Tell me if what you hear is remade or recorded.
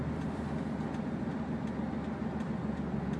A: recorded